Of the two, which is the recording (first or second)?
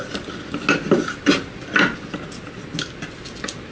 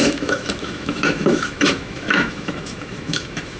first